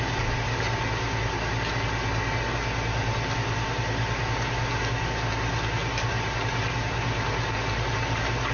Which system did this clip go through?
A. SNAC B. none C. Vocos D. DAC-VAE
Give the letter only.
B